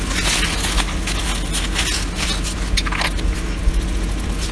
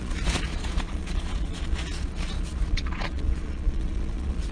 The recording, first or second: first